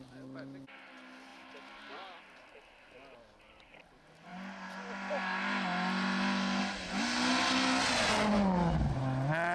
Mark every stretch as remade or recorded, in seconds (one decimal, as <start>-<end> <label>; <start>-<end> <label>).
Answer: 0.0-9.5 recorded